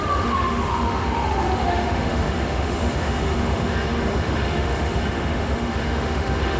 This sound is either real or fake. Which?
fake